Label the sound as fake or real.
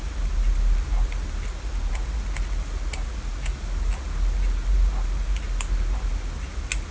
real